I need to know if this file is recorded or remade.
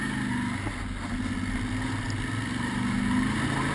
recorded